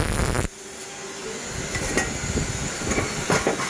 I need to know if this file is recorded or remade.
recorded